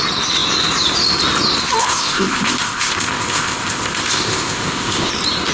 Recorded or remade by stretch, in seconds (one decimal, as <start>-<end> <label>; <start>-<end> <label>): 0.0-1.8 recorded; 1.8-5.1 remade; 5.1-5.5 recorded

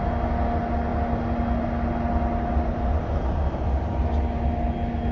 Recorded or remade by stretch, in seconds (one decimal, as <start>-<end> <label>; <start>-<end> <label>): 0.0-5.1 recorded

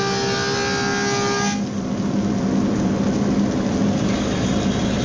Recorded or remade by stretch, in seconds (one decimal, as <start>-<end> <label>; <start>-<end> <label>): 0.0-5.0 recorded

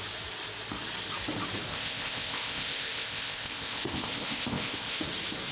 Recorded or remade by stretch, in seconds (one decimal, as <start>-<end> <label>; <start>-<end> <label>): 0.0-1.7 recorded; 1.7-5.0 remade; 5.0-5.5 recorded

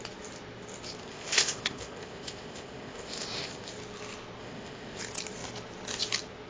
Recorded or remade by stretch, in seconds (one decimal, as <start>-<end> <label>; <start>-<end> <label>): 0.0-1.0 recorded; 1.0-3.7 remade; 3.7-4.4 recorded; 4.4-5.0 remade; 5.0-6.5 recorded

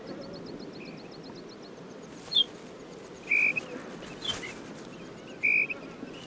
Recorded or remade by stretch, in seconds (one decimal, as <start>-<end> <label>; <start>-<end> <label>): 0.0-6.3 recorded

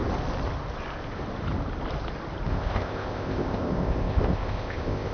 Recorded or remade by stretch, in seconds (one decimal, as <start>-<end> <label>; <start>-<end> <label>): 0.0-2.5 recorded; 2.5-5.1 remade

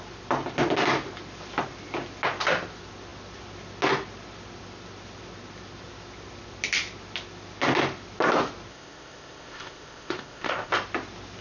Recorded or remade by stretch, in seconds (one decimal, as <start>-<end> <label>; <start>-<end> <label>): 0.0-8.7 recorded; 8.7-10.7 remade; 10.7-11.4 recorded